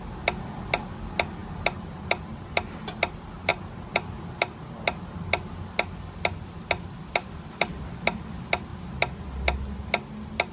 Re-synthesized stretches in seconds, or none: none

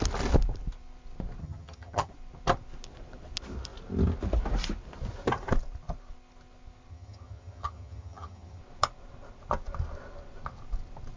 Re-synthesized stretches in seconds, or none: 1.4-2.1 (vocoder, HiFi-GAN); 6.9-8.6